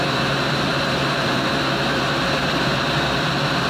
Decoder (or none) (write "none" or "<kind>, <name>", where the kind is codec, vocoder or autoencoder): vocoder, BigVGAN v2